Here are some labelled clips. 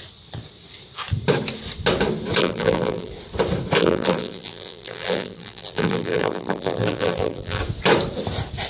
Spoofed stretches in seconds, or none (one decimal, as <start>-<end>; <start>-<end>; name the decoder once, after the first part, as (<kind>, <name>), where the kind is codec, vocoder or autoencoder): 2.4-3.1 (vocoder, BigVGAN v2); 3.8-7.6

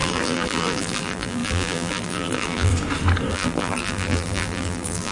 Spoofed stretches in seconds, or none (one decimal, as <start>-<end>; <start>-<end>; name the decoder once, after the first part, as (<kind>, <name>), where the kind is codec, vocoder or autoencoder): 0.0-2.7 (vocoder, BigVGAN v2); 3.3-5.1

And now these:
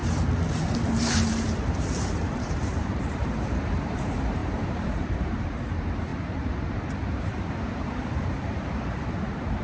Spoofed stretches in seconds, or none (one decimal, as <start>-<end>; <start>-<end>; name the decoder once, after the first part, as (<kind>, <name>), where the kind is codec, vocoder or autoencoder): 0.9-6.1 (vocoder, BigVGAN v2); 7.1-9.6

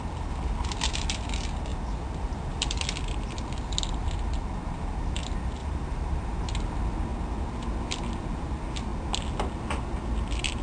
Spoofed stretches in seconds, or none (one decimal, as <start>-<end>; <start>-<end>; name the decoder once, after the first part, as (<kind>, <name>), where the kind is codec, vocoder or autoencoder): 5.6-6.4 (vocoder, BigVGAN v2)

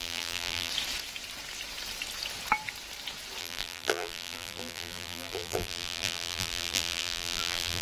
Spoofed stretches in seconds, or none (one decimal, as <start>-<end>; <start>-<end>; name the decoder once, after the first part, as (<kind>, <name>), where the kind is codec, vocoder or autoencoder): 0.0-0.7 (vocoder, BigVGAN v2); 3.4-7.8

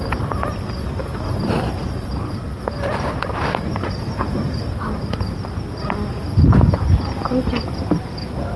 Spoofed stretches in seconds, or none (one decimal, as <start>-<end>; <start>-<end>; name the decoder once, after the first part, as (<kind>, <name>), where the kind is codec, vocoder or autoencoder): 1.0-5.2 (vocoder, BigVGAN v2)

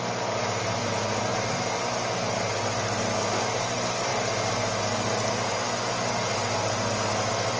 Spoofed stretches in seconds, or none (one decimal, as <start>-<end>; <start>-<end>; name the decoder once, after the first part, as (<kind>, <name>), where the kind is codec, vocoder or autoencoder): 0.0-4.1 (vocoder, BigVGAN v2)